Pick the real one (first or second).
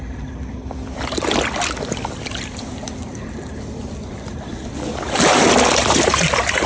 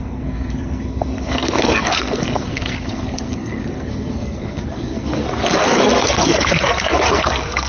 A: first